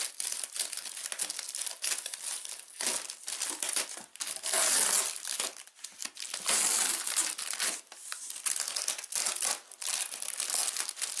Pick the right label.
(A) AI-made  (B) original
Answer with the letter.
B